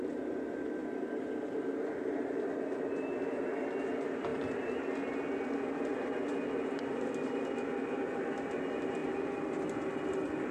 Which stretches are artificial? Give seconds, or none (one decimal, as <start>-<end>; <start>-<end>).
0.0-0.8; 3.0-4.3; 5.7-9.0